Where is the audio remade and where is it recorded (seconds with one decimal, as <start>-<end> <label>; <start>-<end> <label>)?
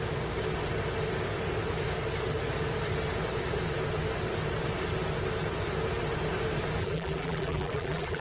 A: 0.0-6.8 recorded; 6.8-8.2 remade